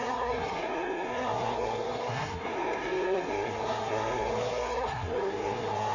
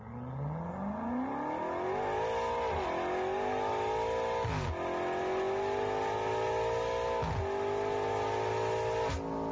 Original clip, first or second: second